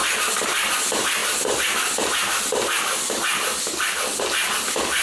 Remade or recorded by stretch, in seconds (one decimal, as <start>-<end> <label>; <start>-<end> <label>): 0.0-5.0 recorded